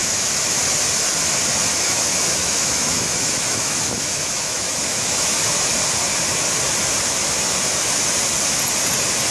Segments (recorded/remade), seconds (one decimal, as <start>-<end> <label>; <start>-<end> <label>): 0.0-0.6 remade; 0.6-1.7 recorded; 1.7-5.5 remade; 5.5-9.3 recorded